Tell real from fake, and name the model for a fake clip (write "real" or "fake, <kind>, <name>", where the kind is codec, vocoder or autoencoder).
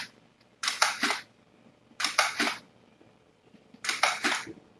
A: fake, vocoder, BigVGAN v2